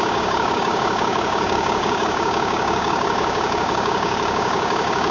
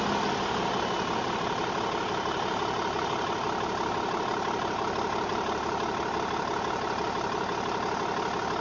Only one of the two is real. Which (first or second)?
second